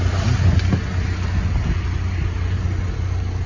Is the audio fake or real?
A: real